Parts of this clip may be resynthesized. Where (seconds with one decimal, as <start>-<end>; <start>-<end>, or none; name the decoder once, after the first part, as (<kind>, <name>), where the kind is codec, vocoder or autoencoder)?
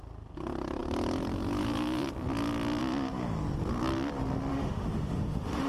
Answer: 4.5-5.7 (autoencoder, DAC-VAE)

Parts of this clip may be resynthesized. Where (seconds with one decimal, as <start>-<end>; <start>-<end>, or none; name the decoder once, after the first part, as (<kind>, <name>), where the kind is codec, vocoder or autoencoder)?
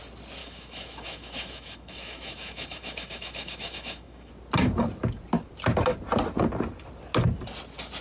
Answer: 0.4-4.3 (autoencoder, DAC-VAE)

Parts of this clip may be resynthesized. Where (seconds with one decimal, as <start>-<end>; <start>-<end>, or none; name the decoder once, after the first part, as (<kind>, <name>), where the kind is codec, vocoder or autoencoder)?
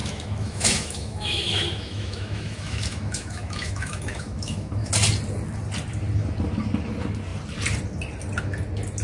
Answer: 0.0-4.9 (autoencoder, DAC-VAE)